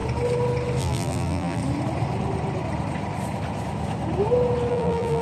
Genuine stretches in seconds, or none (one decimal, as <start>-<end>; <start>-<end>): 0.0-0.8; 1.6-4.7